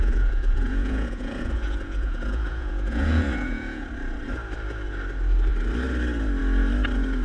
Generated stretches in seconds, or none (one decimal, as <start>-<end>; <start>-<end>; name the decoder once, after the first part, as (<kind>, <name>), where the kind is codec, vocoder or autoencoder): 0.0-3.9 (vocoder, Vocos)